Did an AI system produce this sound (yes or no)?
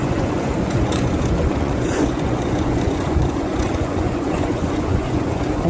yes